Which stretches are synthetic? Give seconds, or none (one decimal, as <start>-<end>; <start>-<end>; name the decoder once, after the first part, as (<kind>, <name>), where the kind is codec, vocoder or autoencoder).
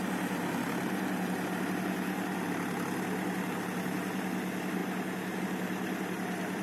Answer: none